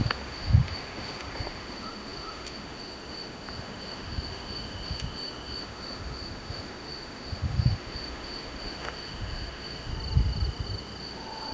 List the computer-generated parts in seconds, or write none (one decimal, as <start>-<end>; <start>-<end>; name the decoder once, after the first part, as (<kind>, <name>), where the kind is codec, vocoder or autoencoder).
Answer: 0.0-9.9 (autoencoder, DAC-VAE); 11.0-11.5